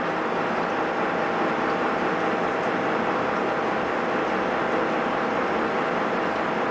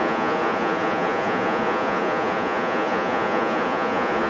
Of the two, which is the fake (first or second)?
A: second